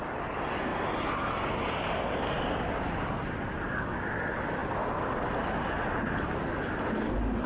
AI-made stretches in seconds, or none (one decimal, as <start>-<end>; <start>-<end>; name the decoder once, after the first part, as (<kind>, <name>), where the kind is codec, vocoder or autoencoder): none